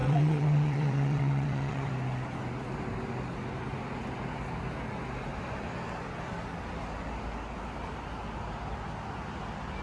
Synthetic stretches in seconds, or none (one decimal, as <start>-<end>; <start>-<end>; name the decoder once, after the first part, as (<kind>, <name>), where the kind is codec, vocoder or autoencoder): 0.0-1.9 (vocoder, WaveNeXt)